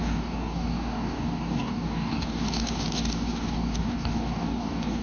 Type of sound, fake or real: fake